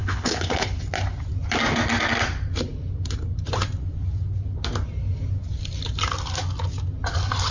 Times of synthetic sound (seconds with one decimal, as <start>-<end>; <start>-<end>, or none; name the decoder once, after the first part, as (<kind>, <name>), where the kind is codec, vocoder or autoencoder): 0.0-0.8 (codec, HILCodec)